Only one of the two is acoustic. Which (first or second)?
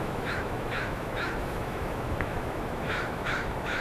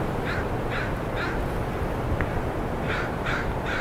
second